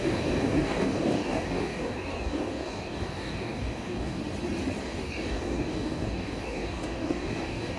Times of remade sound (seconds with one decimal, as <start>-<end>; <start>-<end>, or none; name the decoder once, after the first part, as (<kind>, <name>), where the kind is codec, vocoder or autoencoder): 0.0-4.2 (codec, DAC); 4.8-7.8